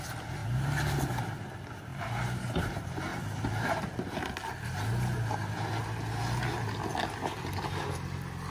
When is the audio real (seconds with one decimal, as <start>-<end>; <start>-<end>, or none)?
0.0-1.9; 2.7-3.1; 4.3-8.5